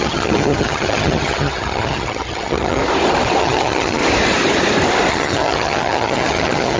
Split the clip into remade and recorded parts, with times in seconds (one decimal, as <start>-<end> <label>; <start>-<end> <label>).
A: 0.0-2.8 remade; 2.8-3.4 recorded; 3.4-4.0 remade; 4.0-5.1 recorded; 5.1-6.8 remade

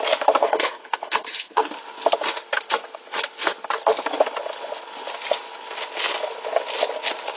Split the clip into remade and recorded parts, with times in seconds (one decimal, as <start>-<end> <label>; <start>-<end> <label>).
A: 0.0-0.4 recorded; 0.4-1.7 remade; 1.7-7.4 recorded

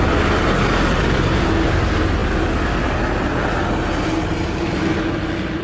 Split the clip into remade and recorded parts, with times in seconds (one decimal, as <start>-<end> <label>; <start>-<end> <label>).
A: 0.0-5.6 recorded